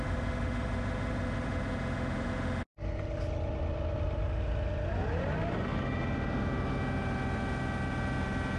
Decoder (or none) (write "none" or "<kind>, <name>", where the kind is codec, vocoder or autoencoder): none